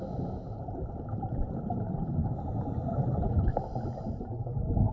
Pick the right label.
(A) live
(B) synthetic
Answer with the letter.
B